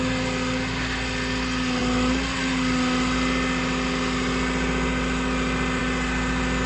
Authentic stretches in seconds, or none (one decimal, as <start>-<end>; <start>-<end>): 0.0-6.7